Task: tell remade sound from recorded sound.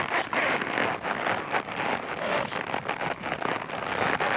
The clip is recorded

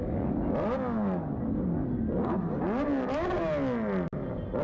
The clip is recorded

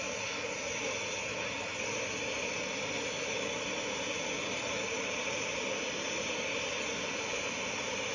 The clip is recorded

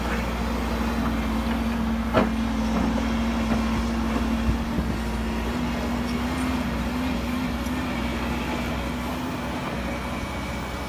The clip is recorded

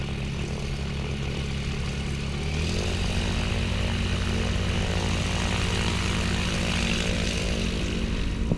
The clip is recorded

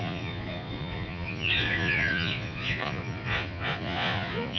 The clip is remade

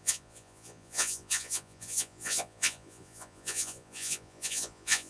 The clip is remade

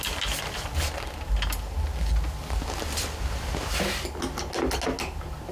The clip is recorded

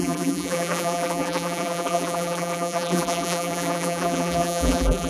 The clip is remade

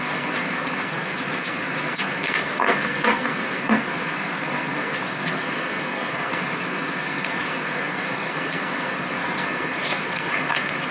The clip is remade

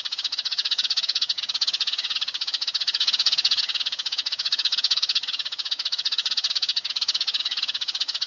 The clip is remade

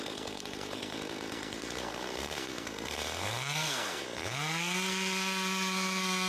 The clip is remade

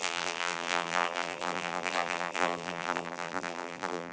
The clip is remade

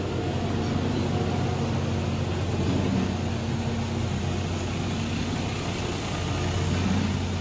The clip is recorded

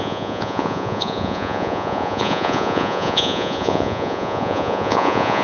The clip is remade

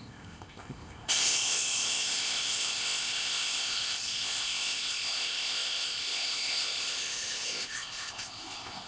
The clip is remade